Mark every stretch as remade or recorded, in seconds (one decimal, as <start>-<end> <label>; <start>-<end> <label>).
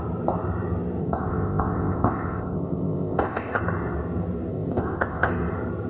0.0-1.0 recorded; 1.0-3.6 remade; 3.6-4.5 recorded; 4.5-5.3 remade; 5.3-5.9 recorded